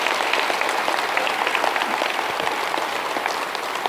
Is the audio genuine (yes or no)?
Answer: yes